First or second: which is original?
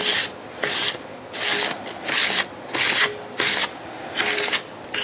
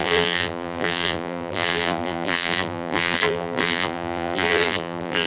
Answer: first